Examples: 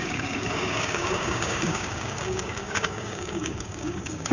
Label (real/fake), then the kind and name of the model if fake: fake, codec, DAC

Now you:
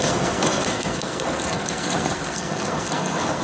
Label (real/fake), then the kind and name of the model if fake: fake, codec, SNAC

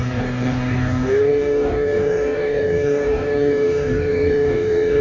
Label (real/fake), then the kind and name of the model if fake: fake, codec, DAC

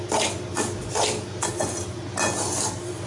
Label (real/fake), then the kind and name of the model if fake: real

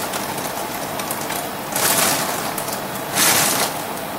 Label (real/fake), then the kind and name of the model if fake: real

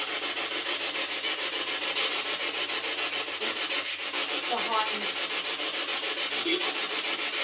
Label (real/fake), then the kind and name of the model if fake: real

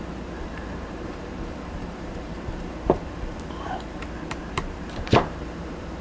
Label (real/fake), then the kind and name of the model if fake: fake, vocoder, BigVGAN v2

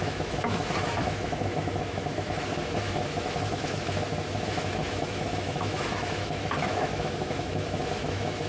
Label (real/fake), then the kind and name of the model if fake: fake, autoencoder, DAC-VAE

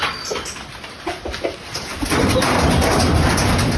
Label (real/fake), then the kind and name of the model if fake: real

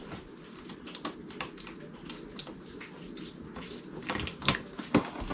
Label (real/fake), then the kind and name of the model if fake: real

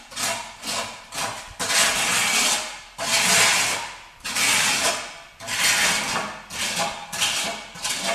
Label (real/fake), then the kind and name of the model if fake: real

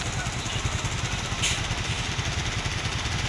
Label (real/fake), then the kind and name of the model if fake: real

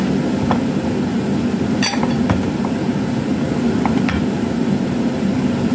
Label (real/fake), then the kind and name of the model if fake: real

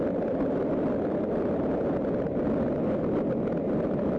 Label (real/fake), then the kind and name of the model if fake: real